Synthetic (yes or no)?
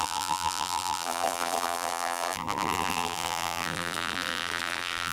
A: yes